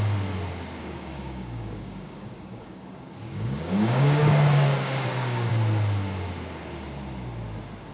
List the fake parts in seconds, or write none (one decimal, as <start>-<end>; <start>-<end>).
0.8-5.5